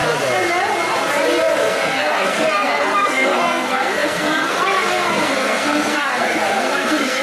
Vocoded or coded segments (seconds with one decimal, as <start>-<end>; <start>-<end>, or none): 1.5-7.2